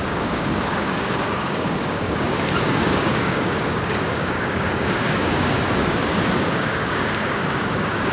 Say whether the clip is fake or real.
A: fake